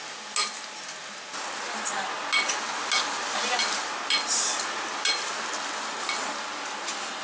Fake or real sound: real